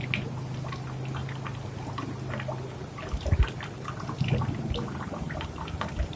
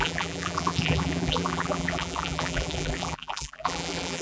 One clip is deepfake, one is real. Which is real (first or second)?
first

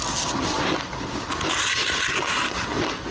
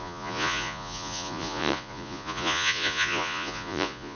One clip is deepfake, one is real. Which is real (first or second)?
first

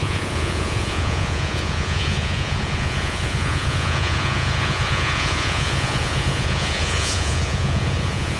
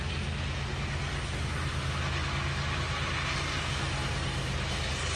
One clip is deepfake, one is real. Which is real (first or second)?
second